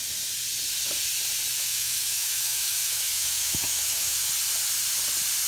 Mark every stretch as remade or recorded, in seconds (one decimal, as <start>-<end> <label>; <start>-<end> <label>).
0.0-1.5 recorded; 1.5-4.3 remade; 4.3-5.5 recorded